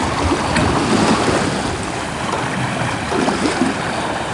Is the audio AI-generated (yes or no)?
no